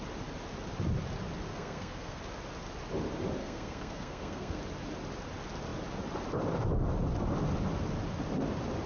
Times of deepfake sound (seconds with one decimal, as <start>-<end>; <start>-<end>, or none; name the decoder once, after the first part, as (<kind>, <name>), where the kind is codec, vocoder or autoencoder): 1.5-2.2 (codec, SNAC); 3.4-4.6